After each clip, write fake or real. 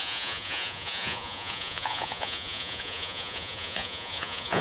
fake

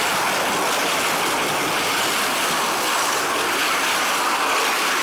real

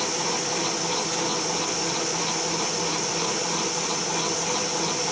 real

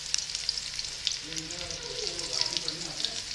real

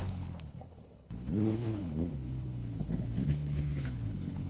fake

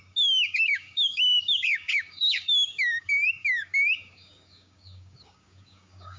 fake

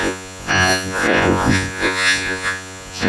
fake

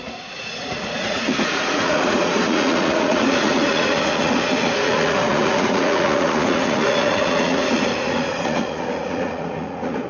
fake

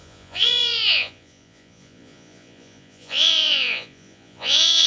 fake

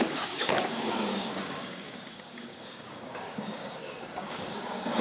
fake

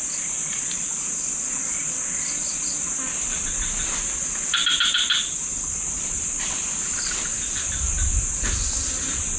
real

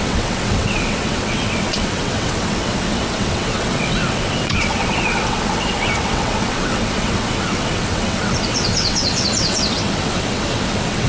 fake